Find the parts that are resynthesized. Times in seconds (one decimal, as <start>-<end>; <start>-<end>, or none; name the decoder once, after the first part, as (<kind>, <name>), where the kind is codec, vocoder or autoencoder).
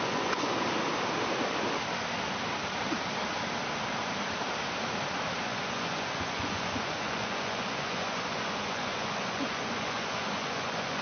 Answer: 0.0-0.5 (vocoder, Vocos); 5.4-11.0